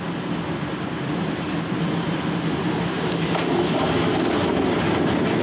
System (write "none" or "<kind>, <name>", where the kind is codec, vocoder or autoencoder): none